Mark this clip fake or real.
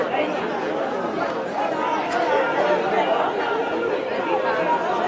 real